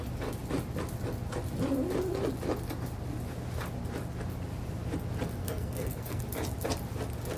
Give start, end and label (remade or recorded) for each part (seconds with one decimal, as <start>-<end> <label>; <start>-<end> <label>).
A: 0.0-5.4 recorded; 5.4-6.2 remade; 6.2-7.4 recorded